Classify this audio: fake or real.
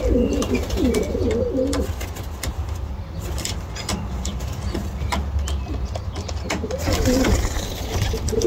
real